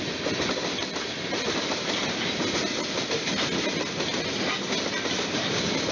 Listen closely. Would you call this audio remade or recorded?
recorded